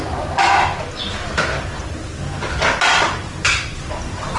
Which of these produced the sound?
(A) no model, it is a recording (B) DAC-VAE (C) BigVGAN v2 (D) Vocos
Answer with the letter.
A